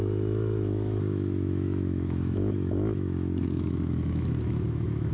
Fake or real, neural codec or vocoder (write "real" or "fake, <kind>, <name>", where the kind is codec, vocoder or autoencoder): fake, autoencoder, DAC-VAE